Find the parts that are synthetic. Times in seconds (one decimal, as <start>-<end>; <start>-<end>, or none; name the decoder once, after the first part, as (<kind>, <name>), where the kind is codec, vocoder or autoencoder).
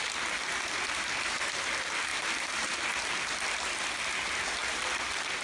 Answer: none